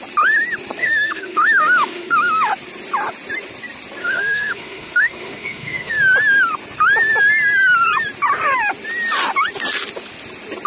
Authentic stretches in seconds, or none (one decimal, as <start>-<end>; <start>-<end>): 0.0-0.8; 2.5-4.0; 6.0-10.7